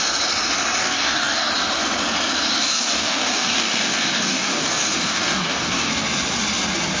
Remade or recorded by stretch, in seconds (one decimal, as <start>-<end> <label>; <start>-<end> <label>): 0.0-0.8 recorded; 0.8-1.5 remade; 1.5-2.5 recorded; 2.5-5.9 remade; 5.9-7.0 recorded